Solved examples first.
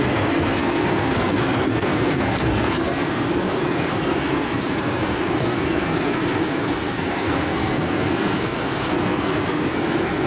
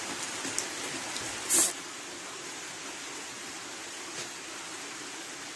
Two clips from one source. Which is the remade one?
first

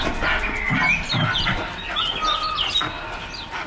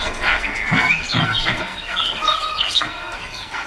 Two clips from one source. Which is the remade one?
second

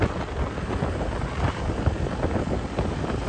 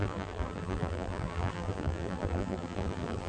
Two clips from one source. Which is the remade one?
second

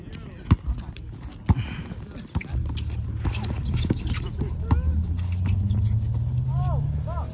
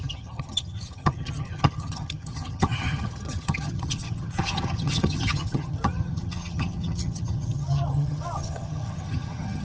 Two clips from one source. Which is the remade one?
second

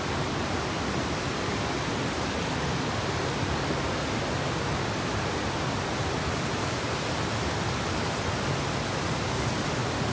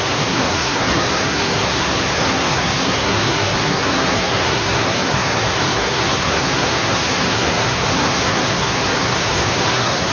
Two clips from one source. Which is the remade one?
second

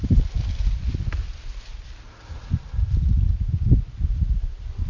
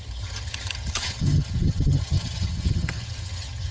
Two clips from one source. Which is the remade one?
second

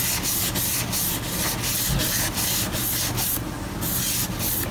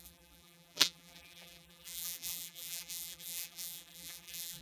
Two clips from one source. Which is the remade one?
second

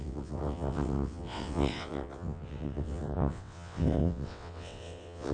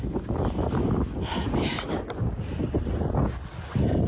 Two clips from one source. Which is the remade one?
first